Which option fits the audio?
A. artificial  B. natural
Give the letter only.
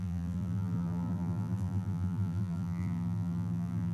A